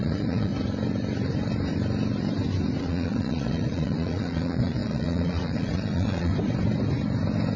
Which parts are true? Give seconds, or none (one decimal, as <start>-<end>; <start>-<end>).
0.5-2.8; 6.3-7.6